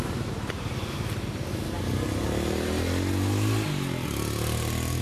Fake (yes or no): no